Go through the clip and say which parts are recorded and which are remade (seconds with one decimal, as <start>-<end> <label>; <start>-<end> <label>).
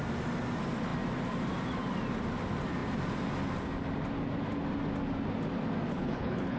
0.0-5.9 recorded; 5.9-6.6 remade